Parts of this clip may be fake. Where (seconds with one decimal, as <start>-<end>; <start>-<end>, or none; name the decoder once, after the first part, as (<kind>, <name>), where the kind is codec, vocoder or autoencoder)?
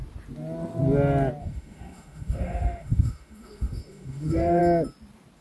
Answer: 1.4-4.6 (autoencoder, DAC-VAE)